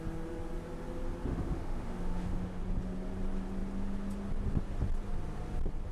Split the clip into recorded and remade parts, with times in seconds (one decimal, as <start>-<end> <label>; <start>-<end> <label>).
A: 0.0-1.3 recorded; 1.3-2.6 remade; 2.6-5.9 recorded